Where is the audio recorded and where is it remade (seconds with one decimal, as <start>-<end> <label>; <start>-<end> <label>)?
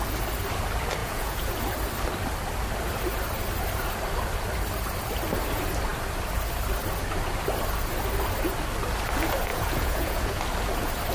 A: 0.0-1.0 recorded; 1.0-1.5 remade; 1.5-9.5 recorded; 9.5-10.4 remade; 10.4-11.1 recorded